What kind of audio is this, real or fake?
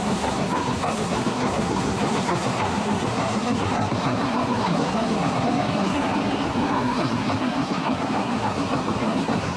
fake